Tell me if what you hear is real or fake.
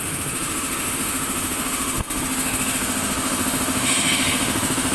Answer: fake